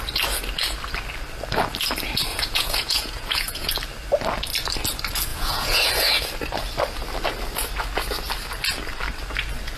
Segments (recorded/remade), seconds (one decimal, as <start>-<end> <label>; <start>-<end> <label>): 0.0-2.3 recorded; 2.3-3.7 remade; 3.7-5.3 recorded; 5.3-5.8 remade; 5.8-9.8 recorded